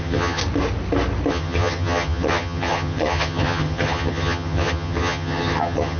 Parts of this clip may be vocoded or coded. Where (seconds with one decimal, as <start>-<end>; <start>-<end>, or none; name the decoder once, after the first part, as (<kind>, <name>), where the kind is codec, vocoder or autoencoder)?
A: 0.0-0.4 (vocoder, HiFi-GAN); 1.3-6.0